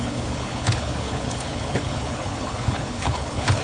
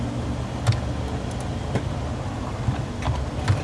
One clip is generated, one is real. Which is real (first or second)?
second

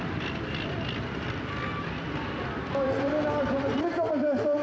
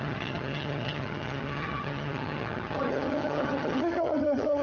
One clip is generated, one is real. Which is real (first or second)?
first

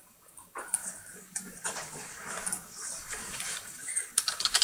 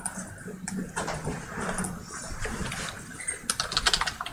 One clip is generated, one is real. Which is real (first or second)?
second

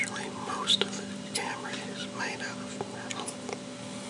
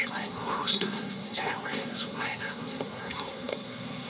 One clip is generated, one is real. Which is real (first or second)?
first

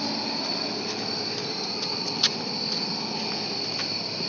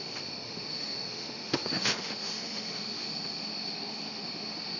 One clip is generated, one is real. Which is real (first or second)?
first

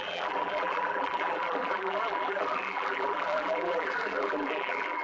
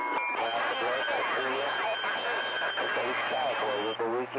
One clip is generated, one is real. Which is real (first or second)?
second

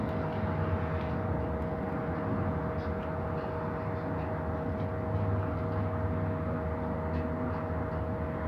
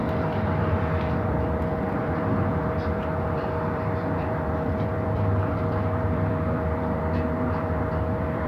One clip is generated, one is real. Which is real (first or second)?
first